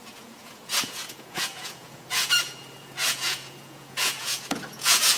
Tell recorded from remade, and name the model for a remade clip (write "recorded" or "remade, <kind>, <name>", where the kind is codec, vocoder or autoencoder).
remade, vocoder, Vocos